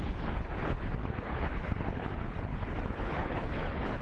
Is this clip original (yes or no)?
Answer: no